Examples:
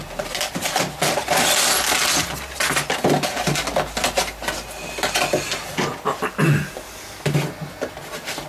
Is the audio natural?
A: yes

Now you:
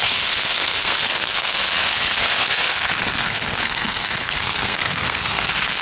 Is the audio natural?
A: no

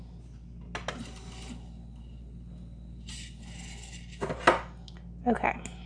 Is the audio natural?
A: yes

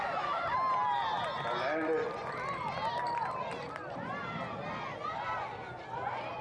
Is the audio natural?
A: yes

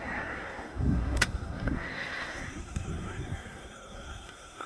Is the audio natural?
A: no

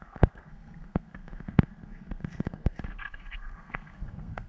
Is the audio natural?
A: no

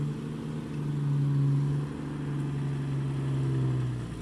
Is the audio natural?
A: yes